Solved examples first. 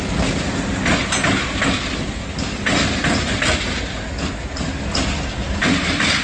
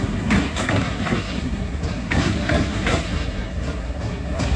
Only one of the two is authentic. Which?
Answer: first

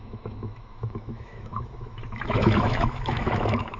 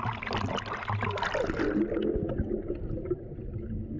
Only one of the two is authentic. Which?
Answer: second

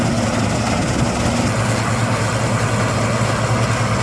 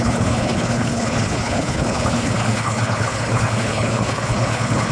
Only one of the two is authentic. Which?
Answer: first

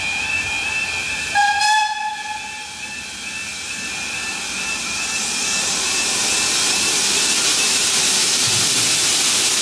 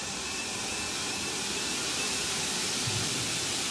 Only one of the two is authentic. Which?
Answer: first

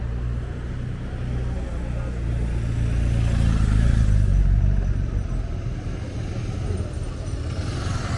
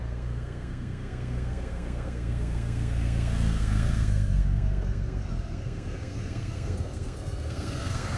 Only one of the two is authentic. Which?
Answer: first